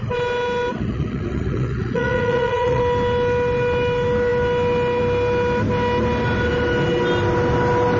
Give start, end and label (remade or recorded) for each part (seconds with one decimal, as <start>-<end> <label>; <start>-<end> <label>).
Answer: 0.0-0.7 recorded; 0.7-2.8 remade; 2.8-8.0 recorded